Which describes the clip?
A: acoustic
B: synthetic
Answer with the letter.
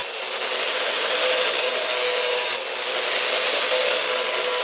A